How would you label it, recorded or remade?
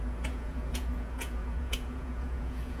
remade